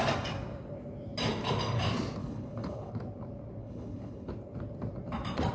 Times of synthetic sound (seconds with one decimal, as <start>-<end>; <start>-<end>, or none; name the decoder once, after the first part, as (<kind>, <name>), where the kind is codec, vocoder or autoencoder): 2.2-2.9 (codec, HILCodec); 3.6-4.3